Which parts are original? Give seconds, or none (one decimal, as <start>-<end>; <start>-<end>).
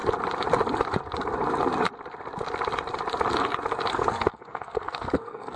0.0-3.9